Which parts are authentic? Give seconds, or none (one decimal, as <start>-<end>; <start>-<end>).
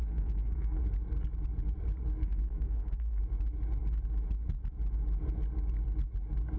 0.8-2.2; 3.2-6.6